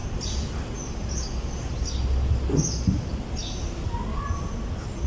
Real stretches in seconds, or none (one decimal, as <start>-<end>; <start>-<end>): 0.0-5.1